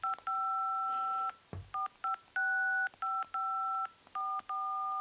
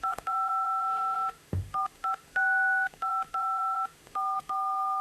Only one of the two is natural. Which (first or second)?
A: first